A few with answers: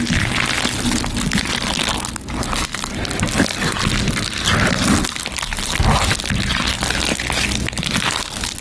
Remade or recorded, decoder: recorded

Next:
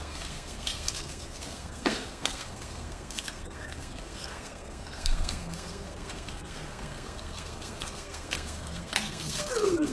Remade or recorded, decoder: remade, codec, SNAC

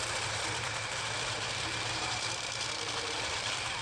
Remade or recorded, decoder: remade, vocoder, BigVGAN v2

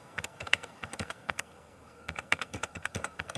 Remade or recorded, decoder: remade, codec, SNAC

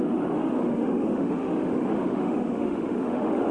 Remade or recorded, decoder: remade, autoencoder, DAC-VAE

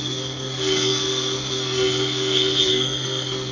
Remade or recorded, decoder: remade, codec, SNAC